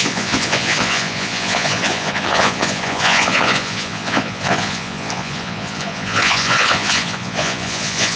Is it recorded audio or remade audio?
remade